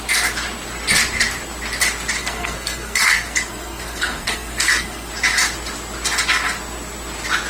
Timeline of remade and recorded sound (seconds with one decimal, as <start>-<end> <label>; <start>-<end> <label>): 0.0-2.2 recorded; 2.2-5.1 remade; 5.1-7.5 recorded

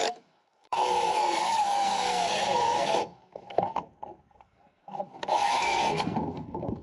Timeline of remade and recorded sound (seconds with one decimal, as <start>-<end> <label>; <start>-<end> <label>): 0.0-6.8 remade